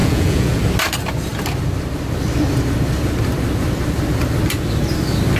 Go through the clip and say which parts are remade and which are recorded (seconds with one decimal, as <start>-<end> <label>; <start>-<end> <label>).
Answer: 0.0-0.6 remade; 0.6-5.4 recorded